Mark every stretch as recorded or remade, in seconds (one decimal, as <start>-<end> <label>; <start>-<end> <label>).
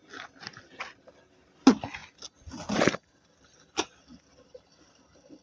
0.0-5.4 recorded